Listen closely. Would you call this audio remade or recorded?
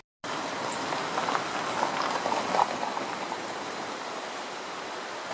recorded